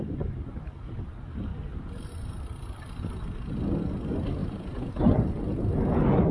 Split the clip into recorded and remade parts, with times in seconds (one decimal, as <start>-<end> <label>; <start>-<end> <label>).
0.0-4.4 recorded; 4.4-4.9 remade; 4.9-6.3 recorded